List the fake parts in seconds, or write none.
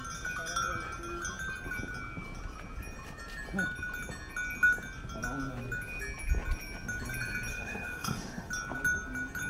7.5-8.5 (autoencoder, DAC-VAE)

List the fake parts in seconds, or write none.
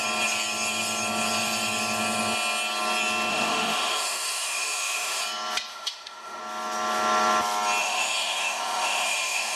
3.3-5.2 (autoencoder, DAC-VAE); 5.7-6.4; 7.8-9.6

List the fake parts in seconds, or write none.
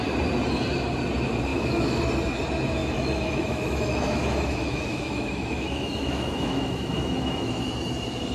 1.5-2.0 (autoencoder, DAC-VAE); 2.8-7.6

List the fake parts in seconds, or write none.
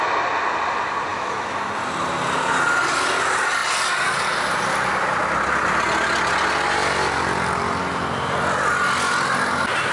1.1-1.7 (autoencoder, DAC-VAE)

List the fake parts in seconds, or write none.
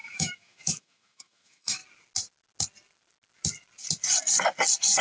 0.0-1.8 (autoencoder, DAC-VAE)